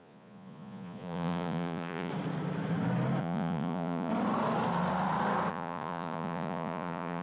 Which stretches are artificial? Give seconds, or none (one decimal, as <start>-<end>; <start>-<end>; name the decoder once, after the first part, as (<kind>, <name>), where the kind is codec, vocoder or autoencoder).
0.0-2.1 (vocoder, Vocos); 3.2-4.1; 5.5-7.2